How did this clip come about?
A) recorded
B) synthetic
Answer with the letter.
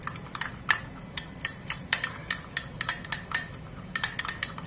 A